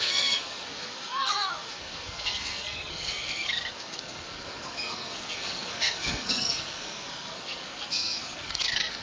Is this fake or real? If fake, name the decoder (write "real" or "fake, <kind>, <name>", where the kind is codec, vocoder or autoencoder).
fake, codec, SNAC